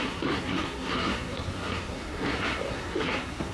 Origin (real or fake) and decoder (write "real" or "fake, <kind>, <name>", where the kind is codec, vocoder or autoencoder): fake, codec, SNAC